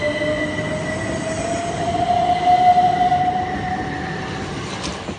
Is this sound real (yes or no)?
yes